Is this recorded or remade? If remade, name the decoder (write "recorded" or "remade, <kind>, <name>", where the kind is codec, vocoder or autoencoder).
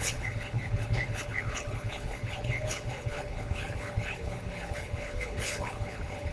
remade, codec, HILCodec